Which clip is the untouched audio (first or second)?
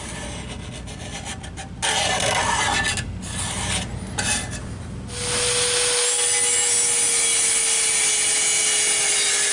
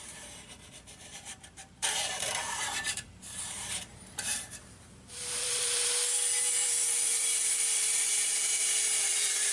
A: first